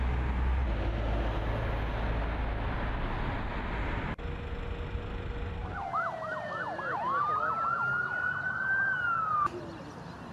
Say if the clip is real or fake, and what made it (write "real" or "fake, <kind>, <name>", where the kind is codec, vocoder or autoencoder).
real